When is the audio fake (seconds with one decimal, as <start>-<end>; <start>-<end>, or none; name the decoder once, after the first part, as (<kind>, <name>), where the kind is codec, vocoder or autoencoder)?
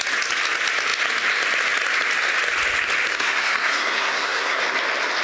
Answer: 3.1-4.6 (codec, SNAC)